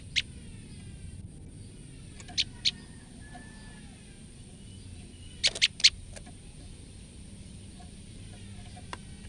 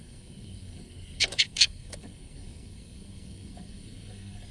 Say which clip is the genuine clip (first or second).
first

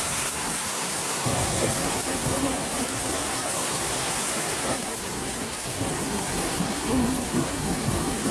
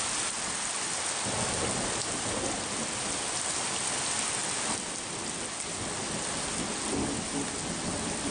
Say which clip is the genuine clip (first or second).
second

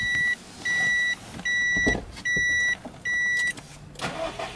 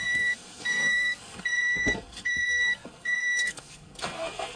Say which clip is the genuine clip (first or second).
first